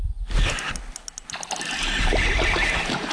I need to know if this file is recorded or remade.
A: recorded